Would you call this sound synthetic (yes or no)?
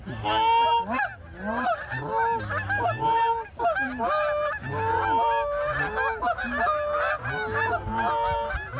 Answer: no